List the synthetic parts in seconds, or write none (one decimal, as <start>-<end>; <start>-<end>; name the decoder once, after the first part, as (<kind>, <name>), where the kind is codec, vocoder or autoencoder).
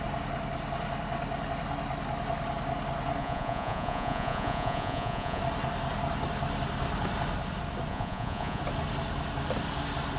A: 3.2-5.4 (vocoder, Vocos); 7.9-8.6